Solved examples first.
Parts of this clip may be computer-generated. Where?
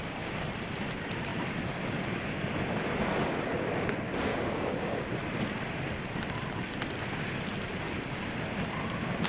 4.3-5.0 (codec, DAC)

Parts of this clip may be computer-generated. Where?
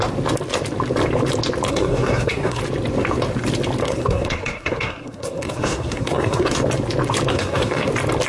1.7-2.6 (codec, SNAC); 3.8-6.5; 7.3-7.9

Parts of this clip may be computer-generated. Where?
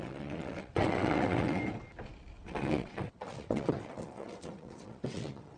0.0-1.6 (vocoder, WaveNeXt); 2.4-5.6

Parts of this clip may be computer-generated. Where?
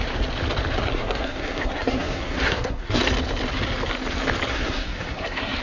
0.9-3.0 (codec, SNAC); 4.5-5.6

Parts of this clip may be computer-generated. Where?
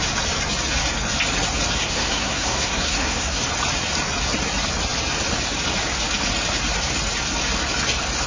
1.8-3.4 (codec, SNAC)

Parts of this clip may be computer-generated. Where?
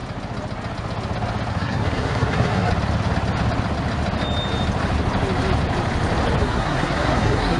1.5-2.7 (codec, SNAC); 6.4-7.6